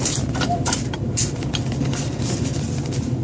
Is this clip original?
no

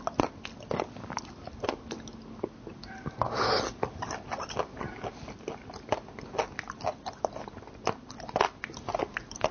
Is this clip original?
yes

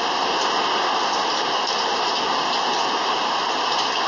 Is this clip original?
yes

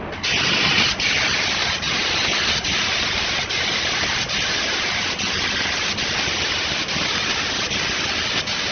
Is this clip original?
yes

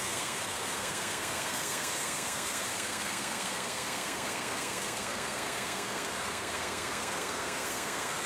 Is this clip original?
no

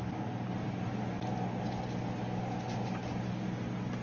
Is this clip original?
yes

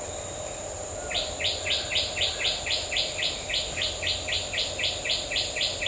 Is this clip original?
yes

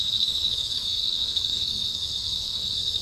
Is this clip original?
no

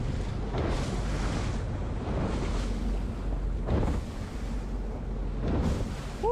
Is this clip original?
yes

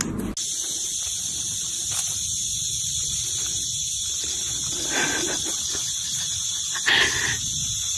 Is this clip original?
yes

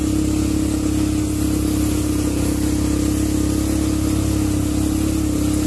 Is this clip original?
yes